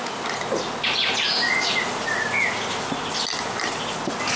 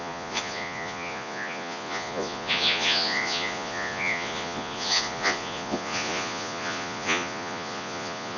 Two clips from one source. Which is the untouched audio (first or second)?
first